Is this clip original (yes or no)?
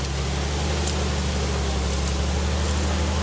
yes